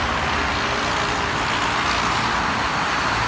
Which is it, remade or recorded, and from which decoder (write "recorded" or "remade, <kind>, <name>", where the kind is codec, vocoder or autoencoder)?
recorded